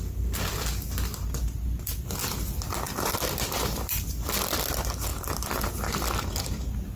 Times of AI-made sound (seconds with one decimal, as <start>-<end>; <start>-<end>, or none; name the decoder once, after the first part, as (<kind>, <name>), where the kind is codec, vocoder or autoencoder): none